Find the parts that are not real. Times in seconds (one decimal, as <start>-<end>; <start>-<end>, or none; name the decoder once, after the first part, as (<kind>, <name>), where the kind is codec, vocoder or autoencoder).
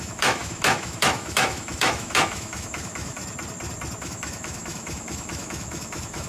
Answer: 0.0-3.2 (autoencoder, DAC-VAE); 4.0-6.3